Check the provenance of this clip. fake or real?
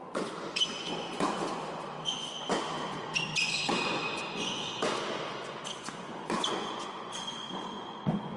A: fake